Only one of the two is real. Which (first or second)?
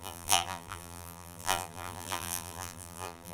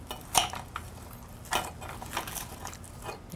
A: second